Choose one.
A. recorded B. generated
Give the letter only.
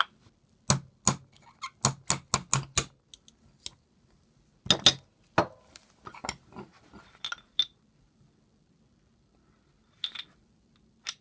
A